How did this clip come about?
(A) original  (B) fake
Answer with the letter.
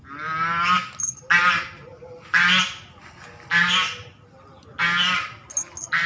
A